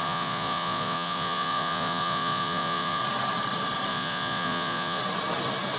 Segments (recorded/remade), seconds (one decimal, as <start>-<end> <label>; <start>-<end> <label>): 0.0-3.0 remade; 3.0-3.9 recorded; 3.9-5.0 remade; 5.0-5.8 recorded